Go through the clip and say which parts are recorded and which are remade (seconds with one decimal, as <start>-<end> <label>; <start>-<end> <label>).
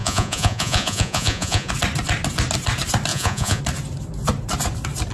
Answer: 0.0-1.7 remade; 1.7-3.1 recorded; 3.1-3.6 remade; 3.6-5.1 recorded